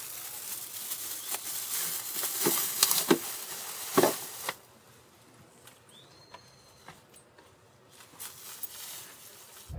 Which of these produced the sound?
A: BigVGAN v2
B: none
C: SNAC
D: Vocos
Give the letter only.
B